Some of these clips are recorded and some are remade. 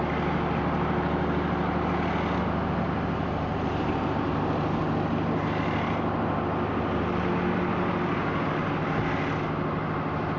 recorded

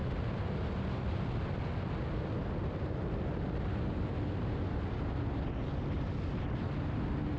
recorded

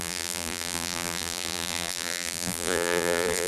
remade